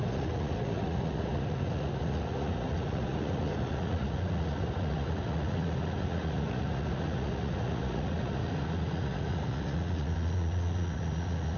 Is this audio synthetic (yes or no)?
yes